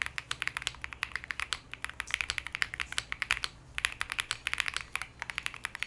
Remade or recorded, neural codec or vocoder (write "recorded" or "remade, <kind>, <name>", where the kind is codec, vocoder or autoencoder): recorded